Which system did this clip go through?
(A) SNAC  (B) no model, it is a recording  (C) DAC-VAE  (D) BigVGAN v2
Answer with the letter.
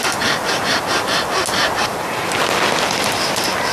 B